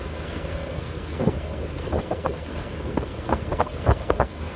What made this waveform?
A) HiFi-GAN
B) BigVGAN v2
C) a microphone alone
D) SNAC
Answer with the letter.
D